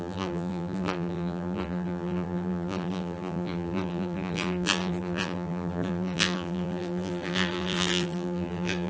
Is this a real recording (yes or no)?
no